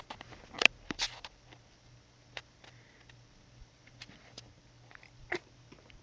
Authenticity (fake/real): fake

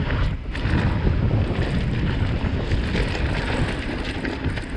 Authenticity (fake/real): real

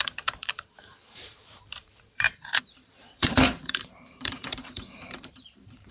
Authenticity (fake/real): fake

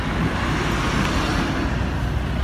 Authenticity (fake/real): real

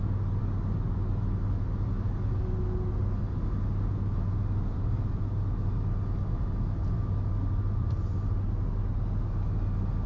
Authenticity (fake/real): real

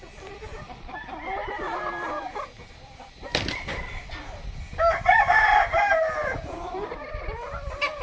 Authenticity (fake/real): fake